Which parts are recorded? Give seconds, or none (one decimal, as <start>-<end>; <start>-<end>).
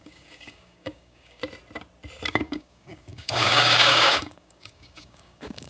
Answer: 1.4-2.3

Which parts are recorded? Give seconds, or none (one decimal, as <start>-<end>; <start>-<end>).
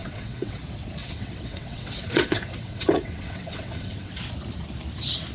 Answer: 0.6-1.0; 4.2-5.3